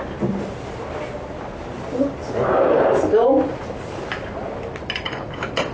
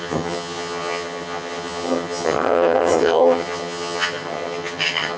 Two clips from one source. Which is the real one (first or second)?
first